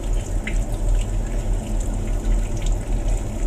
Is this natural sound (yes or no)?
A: yes